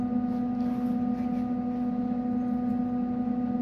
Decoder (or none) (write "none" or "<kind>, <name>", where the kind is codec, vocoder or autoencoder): none